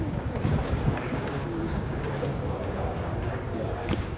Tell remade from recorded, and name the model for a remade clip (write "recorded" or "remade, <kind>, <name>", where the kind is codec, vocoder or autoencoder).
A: remade, codec, DAC